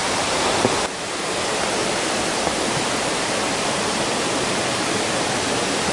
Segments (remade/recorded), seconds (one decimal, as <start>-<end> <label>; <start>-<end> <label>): 0.0-1.0 remade; 1.0-1.8 recorded; 1.8-5.3 remade; 5.3-5.9 recorded